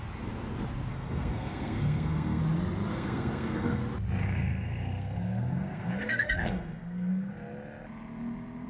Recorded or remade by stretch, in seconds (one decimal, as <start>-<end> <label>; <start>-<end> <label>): 0.0-0.9 recorded; 0.9-2.4 remade; 2.4-2.9 recorded; 2.9-3.8 remade; 3.8-4.2 recorded; 4.2-7.3 remade; 7.3-8.7 recorded